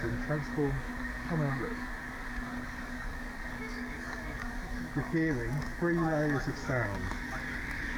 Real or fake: fake